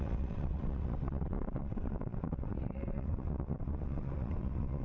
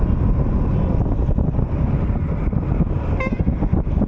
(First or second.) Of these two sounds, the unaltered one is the second